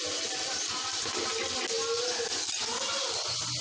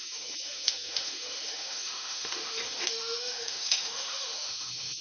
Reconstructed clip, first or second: second